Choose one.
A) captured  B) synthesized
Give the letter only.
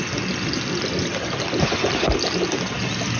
A